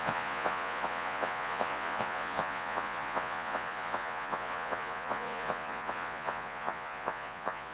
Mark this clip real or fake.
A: fake